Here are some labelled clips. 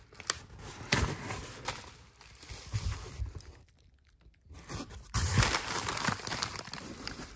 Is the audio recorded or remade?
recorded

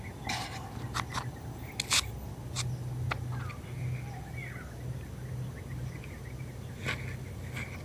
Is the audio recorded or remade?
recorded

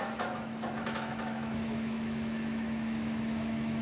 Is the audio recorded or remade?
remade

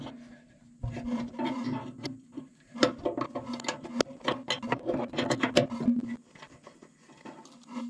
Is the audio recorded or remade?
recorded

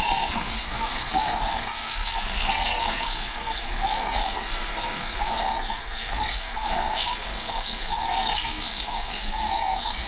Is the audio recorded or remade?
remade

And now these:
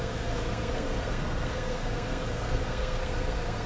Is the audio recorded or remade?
remade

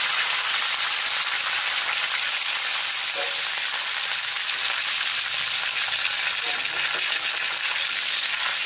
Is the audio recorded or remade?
recorded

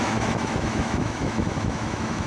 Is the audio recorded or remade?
remade